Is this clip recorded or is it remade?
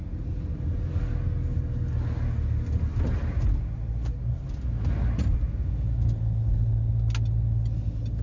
recorded